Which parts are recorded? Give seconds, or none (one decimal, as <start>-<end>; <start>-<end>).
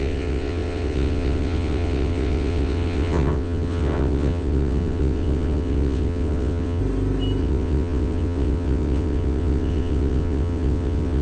6.8-7.4